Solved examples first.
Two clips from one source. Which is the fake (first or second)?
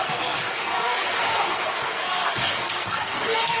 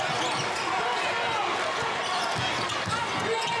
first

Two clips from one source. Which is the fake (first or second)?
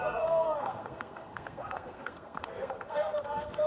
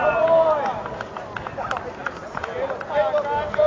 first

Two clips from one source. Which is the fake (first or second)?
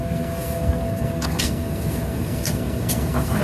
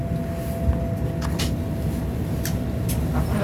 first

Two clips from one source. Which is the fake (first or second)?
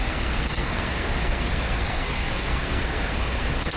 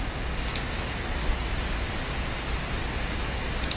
first